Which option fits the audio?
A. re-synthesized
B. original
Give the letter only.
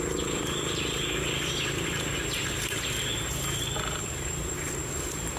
A